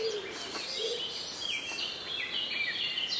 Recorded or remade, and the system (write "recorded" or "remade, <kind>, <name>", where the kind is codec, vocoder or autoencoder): recorded